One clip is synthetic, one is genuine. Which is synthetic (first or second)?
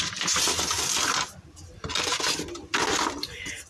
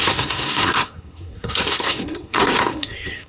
second